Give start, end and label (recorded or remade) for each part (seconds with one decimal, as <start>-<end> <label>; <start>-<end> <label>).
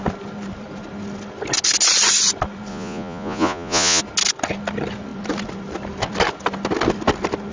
0.0-2.7 recorded; 2.7-4.0 remade; 4.0-7.5 recorded